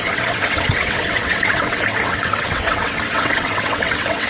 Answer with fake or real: fake